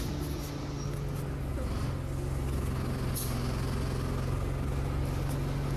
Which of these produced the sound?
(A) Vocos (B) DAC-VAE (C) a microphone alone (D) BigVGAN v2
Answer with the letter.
C